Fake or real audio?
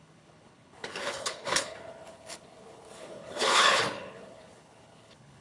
fake